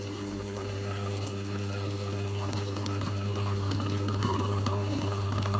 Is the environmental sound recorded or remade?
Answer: remade